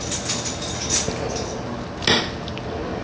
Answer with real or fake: real